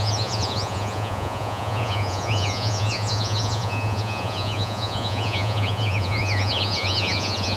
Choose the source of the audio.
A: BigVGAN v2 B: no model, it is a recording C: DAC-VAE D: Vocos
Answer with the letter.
D